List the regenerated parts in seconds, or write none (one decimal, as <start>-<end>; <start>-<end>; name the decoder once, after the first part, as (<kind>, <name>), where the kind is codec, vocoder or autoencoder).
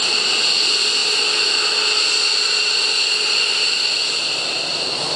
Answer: none